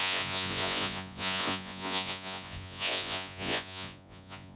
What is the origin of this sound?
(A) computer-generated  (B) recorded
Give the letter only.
A